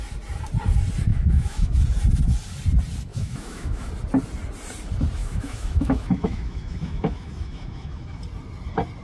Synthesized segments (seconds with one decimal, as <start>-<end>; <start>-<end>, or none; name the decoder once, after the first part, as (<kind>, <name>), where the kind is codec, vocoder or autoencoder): 1.1-1.8 (autoencoder, DAC-VAE); 3.1-3.9; 5.2-8.2